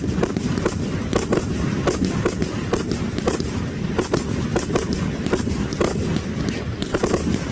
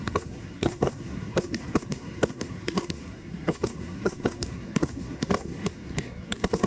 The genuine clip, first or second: first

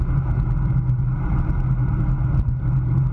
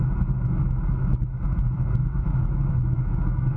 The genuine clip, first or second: first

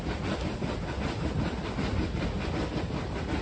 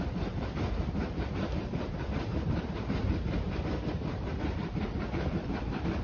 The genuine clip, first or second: first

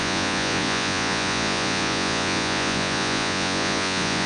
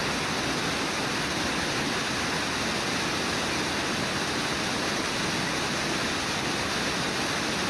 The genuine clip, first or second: second